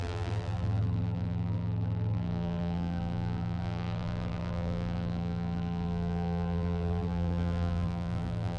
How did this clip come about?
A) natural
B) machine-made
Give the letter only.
B